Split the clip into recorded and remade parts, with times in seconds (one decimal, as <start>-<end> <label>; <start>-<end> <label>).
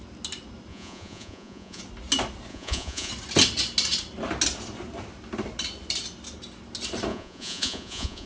0.0-0.7 recorded; 0.7-1.8 remade; 1.8-2.5 recorded; 2.5-3.1 remade; 3.1-7.1 recorded; 7.1-8.3 remade